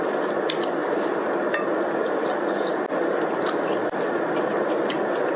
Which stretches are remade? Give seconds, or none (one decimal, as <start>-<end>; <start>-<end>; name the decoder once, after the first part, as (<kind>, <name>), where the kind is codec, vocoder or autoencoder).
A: none